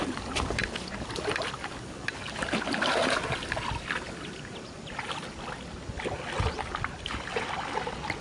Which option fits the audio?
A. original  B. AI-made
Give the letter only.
A